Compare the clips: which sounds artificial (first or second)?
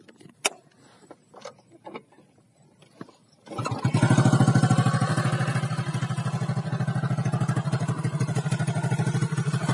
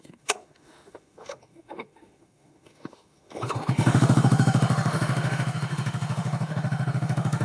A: second